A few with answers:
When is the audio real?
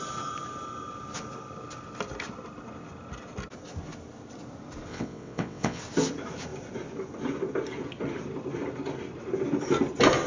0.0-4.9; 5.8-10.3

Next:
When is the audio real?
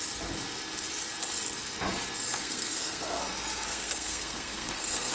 0.0-2.4; 3.2-3.7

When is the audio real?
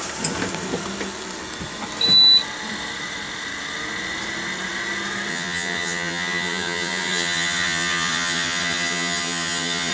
0.0-5.3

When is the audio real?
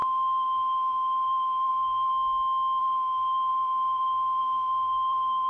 2.1-2.8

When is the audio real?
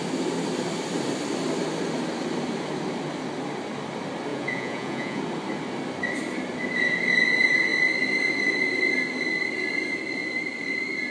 0.0-4.3; 5.2-11.1